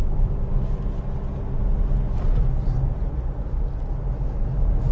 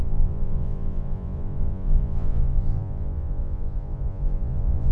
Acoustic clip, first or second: first